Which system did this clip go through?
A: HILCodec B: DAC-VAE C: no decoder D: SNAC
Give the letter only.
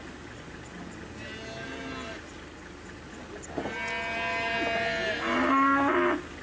C